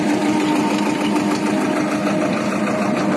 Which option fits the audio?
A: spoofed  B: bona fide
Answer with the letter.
B